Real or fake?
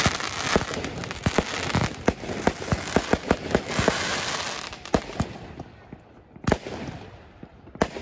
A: real